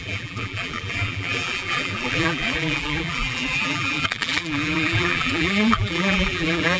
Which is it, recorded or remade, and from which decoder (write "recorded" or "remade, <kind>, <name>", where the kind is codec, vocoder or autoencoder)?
remade, vocoder, BigVGAN v2